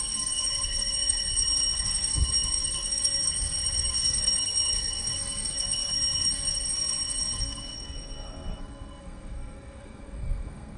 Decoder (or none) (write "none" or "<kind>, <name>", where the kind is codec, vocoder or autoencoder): codec, SNAC